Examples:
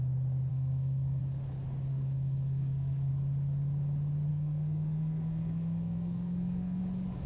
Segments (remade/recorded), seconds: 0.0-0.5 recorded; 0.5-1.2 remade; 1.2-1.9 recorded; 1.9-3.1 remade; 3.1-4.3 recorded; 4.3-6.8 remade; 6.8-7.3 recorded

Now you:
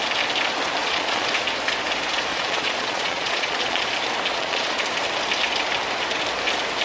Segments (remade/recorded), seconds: 0.0-0.8 recorded; 0.8-1.3 remade; 1.3-2.3 recorded; 2.3-3.8 remade; 3.8-4.3 recorded; 4.3-4.8 remade; 4.8-6.8 recorded

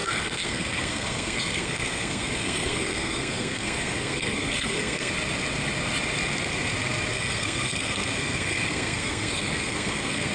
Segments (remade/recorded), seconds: 0.0-5.1 remade; 5.1-7.1 recorded; 7.1-10.3 remade

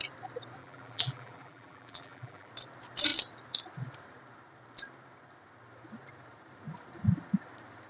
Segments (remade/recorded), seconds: 0.0-0.6 recorded; 0.6-2.5 remade; 2.5-7.9 recorded

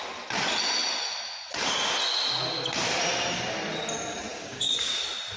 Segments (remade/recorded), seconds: 0.0-4.3 recorded; 4.3-5.0 remade; 5.0-5.4 recorded

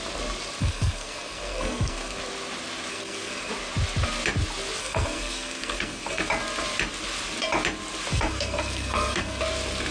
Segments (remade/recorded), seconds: 0.0-0.6 recorded; 0.6-2.2 remade; 2.2-2.9 recorded; 2.9-3.5 remade; 3.5-4.8 recorded; 4.8-6.2 remade; 6.2-8.1 recorded; 8.1-9.4 remade; 9.4-9.9 recorded

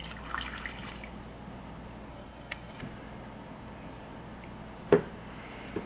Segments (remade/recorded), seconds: 0.0-2.1 recorded; 2.1-2.8 remade; 2.8-5.9 recorded

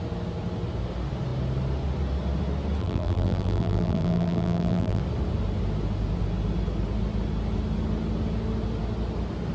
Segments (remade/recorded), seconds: 0.0-2.8 recorded; 2.8-5.0 remade; 5.0-9.5 recorded